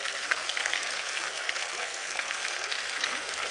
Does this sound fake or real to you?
fake